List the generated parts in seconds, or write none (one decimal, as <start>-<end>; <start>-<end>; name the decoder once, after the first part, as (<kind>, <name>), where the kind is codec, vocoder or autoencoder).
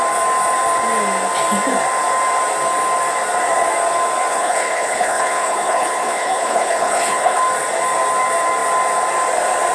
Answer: 4.3-7.4 (codec, HILCodec)